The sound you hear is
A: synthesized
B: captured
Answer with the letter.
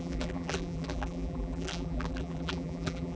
A